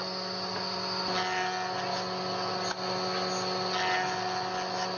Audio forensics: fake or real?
real